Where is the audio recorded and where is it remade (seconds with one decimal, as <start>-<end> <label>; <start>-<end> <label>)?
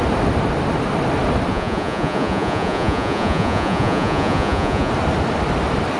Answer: 0.0-1.5 recorded; 1.5-4.9 remade; 4.9-6.0 recorded